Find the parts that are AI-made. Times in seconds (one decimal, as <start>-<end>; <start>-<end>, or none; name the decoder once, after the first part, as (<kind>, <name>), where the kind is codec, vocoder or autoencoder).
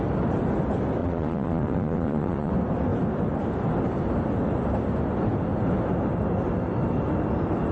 1.0-2.5 (vocoder, Vocos)